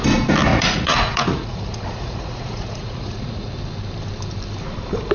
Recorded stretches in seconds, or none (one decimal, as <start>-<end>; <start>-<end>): 0.0-0.5; 3.5-5.1